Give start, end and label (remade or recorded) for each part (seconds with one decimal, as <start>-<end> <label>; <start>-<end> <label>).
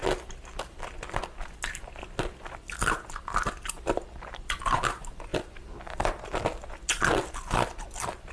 0.0-8.3 recorded